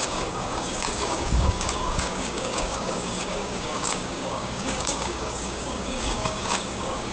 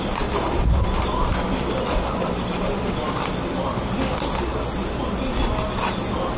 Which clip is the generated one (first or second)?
first